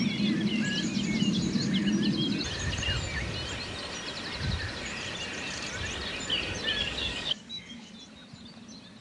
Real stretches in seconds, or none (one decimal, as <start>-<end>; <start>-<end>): 0.0-6.8; 7.9-9.0